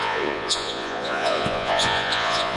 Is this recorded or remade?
remade